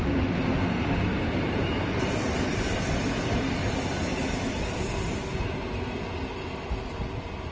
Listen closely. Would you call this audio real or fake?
real